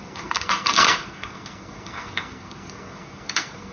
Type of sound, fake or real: fake